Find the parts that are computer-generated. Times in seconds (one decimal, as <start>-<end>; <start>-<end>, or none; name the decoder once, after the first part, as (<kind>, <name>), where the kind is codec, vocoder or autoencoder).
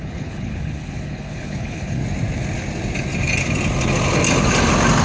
0.0-2.0 (codec, HILCodec)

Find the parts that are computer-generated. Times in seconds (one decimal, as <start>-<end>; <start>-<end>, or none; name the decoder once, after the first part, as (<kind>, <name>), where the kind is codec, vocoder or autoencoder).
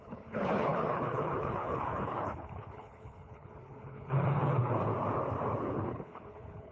0.0-4.9 (codec, HILCodec); 5.6-6.7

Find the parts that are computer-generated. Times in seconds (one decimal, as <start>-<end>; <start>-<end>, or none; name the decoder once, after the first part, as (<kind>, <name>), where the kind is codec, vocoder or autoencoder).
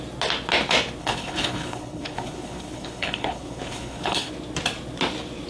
1.0-4.3 (codec, HILCodec)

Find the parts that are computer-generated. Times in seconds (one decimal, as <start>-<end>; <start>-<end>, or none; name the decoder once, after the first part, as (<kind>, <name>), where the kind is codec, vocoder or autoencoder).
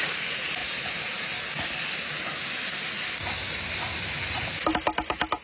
none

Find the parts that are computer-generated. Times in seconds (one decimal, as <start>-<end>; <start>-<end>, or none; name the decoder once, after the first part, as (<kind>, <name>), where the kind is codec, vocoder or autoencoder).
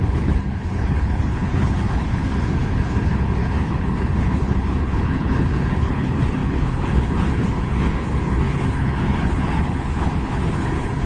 0.0-11.1 (codec, HILCodec)